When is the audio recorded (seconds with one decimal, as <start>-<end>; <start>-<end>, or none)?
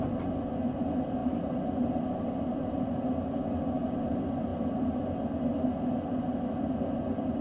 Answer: 0.0-7.4